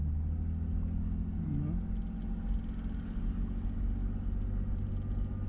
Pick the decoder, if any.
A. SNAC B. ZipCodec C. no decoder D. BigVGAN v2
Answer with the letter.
C